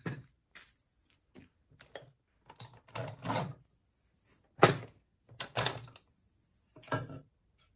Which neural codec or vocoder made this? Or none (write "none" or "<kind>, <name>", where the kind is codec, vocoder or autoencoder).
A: none